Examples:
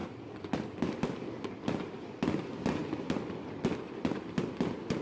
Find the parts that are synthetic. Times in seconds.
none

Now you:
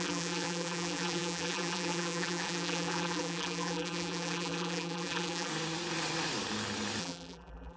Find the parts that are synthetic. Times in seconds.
0.0-5.5 (vocoder, BigVGAN v2); 7.0-7.8

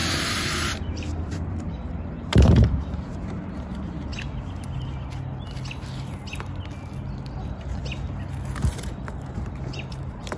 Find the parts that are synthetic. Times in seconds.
0.0-4.1 (vocoder, BigVGAN v2); 7.2-7.8; 8.7-10.4

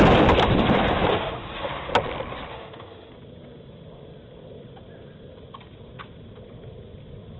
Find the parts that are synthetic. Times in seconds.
1.1-1.9 (autoencoder, DAC-VAE); 2.5-3.1

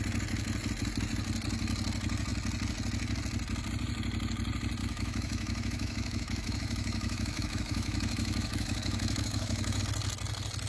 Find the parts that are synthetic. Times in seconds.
4.8-9.8 (autoencoder, DAC-VAE)

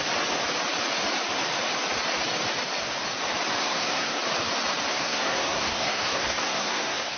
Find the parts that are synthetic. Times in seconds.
3.6-4.2 (codec, SNAC); 4.9-7.2

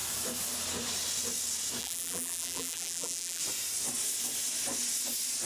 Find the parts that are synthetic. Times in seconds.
1.8-3.4 (vocoder, BigVGAN v2)

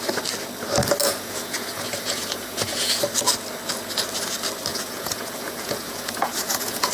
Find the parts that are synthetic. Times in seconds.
1.0-3.0 (vocoder, Vocos); 4.7-6.9